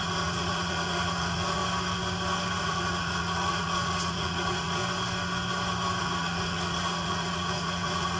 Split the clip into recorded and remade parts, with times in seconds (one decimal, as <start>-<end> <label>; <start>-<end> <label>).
0.0-1.6 remade; 1.6-2.6 recorded; 2.6-4.8 remade; 4.8-6.0 recorded; 6.0-8.2 remade